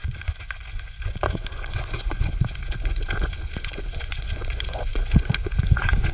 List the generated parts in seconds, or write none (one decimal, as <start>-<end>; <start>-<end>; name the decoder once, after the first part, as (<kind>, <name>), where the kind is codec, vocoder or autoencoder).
0.0-6.1 (vocoder, Vocos)